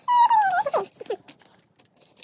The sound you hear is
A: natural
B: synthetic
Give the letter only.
A